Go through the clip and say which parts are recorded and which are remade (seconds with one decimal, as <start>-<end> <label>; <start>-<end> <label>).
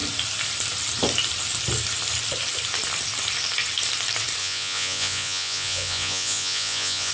0.0-4.4 recorded; 4.4-7.1 remade